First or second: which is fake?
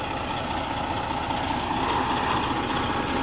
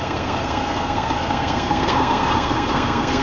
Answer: second